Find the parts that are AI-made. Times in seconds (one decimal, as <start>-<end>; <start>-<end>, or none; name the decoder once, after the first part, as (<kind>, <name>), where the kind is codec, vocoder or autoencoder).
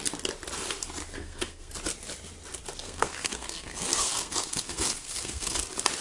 1.2-1.7 (codec, SNAC); 2.8-5.6